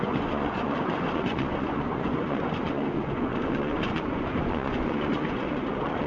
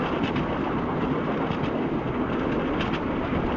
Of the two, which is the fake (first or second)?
first